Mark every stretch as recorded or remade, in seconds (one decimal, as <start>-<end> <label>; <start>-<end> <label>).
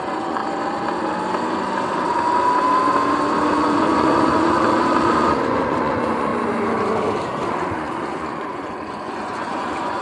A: 0.0-0.4 remade; 0.4-3.5 recorded; 3.5-6.3 remade; 6.3-7.5 recorded; 7.5-10.0 remade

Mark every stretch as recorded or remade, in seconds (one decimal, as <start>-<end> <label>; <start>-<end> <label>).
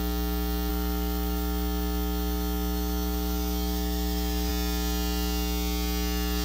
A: 0.0-0.7 recorded; 0.7-4.5 remade; 4.5-6.4 recorded